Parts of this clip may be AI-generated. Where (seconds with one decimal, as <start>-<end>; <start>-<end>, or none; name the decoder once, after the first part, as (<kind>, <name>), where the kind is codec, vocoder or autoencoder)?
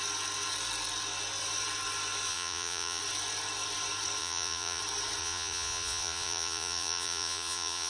2.3-3.0 (vocoder, Vocos); 4.2-4.8; 5.2-7.9